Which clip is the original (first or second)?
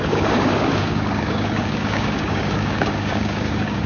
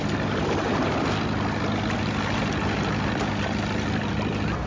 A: second